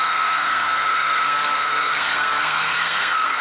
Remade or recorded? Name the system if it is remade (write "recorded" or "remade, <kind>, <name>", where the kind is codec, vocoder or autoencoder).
remade, codec, SNAC